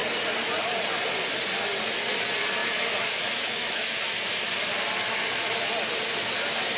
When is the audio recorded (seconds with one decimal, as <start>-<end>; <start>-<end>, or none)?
0.0-2.6; 4.2-6.8